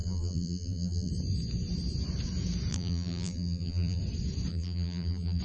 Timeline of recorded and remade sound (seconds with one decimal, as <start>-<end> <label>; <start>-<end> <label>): 0.0-1.1 remade; 1.1-2.7 recorded; 2.7-4.0 remade; 4.0-4.5 recorded; 4.5-5.4 remade